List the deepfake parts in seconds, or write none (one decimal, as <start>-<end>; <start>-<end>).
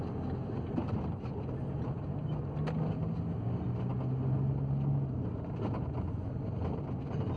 0.8-1.4